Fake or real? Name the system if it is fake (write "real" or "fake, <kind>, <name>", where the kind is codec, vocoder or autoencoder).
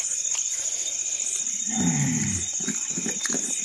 real